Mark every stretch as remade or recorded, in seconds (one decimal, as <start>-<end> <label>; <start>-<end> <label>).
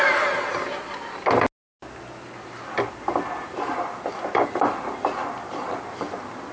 0.0-6.5 recorded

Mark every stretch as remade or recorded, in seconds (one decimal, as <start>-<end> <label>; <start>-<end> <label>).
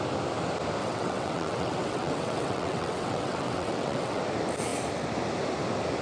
0.0-0.8 recorded; 0.8-4.2 remade; 4.2-6.0 recorded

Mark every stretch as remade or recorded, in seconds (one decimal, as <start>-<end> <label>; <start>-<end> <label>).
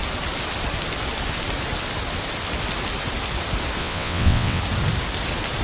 0.0-3.8 recorded; 3.8-4.6 remade; 4.6-5.6 recorded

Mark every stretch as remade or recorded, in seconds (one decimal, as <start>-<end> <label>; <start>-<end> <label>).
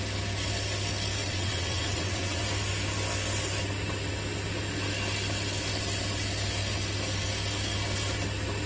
0.0-1.2 recorded; 1.2-2.4 remade; 2.4-8.7 recorded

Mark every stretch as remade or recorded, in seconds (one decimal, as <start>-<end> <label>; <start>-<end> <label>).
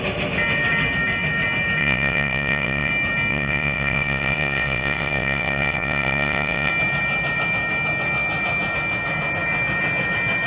0.0-1.8 recorded; 1.8-2.9 remade; 2.9-3.3 recorded; 3.3-6.7 remade; 6.7-10.5 recorded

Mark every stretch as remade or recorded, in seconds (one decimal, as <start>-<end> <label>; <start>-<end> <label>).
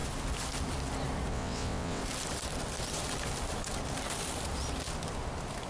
0.0-1.3 recorded; 1.3-2.0 remade; 2.0-5.7 recorded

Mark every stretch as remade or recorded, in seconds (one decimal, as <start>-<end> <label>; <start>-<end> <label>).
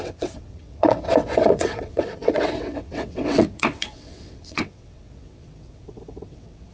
0.0-6.7 remade